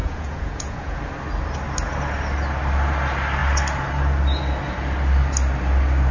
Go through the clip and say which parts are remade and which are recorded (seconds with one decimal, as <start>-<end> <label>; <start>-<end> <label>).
0.0-1.0 remade; 1.0-6.1 recorded